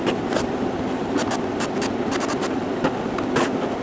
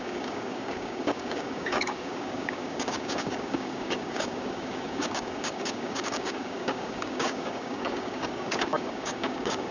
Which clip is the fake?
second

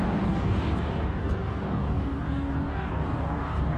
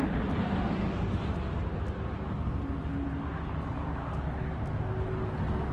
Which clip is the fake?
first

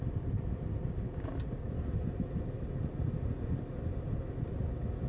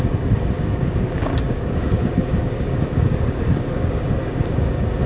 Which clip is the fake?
second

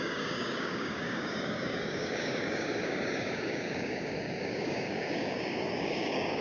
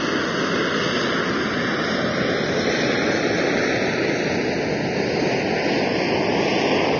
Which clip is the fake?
first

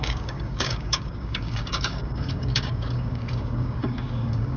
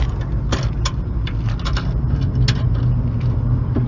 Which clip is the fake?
first